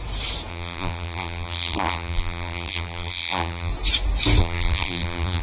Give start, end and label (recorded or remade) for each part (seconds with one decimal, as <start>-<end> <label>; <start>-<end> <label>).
0.0-0.5 recorded; 0.5-3.7 remade; 3.7-4.4 recorded; 4.4-5.4 remade